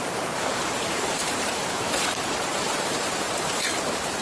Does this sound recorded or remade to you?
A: remade